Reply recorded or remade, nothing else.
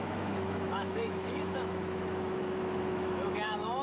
remade